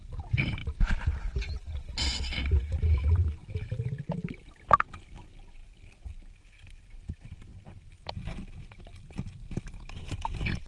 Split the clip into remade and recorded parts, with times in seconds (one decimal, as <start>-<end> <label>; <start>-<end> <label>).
0.0-10.7 recorded